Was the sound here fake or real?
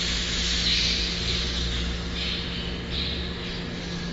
real